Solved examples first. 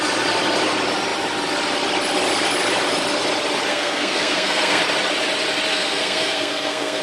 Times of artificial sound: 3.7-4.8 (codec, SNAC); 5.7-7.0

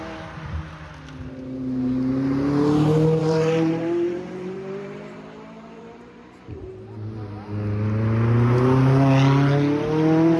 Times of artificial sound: 3.2-6.7 (vocoder, BigVGAN v2)

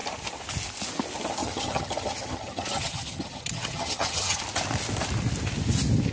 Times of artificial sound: 1.4-4.4 (vocoder, HiFi-GAN)

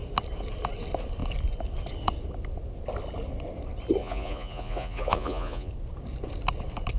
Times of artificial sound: 4.0-5.7 (vocoder, Vocos)